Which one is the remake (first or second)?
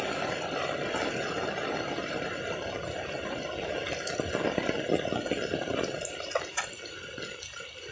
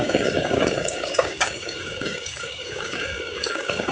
second